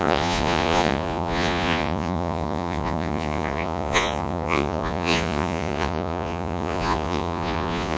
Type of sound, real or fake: fake